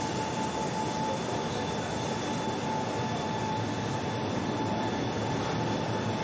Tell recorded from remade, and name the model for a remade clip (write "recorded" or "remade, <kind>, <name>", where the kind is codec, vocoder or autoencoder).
recorded